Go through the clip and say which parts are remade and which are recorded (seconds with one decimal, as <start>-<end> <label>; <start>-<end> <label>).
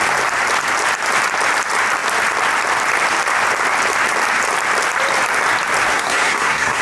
0.0-5.9 recorded; 5.9-6.8 remade